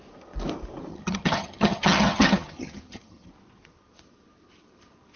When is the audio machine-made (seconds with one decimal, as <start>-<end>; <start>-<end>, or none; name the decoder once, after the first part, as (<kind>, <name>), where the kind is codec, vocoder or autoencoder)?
0.9-3.3 (vocoder, HiFi-GAN)